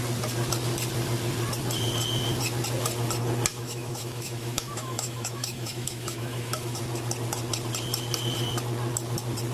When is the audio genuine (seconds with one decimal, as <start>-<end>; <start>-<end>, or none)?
0.0-3.5; 6.8-9.5